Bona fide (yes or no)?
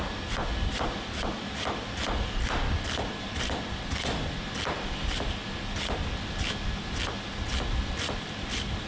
yes